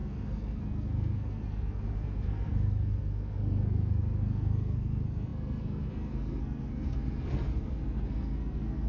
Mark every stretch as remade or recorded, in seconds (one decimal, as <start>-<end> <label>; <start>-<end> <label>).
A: 0.0-8.9 remade